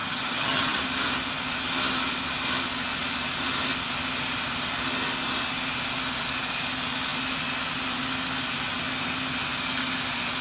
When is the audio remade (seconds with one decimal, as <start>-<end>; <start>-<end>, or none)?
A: 0.0-0.8